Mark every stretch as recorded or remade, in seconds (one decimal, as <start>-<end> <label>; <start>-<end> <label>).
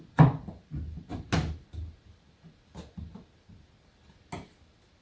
0.0-5.0 recorded